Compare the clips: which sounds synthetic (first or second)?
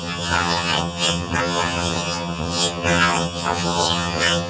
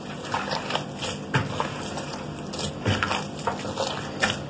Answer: first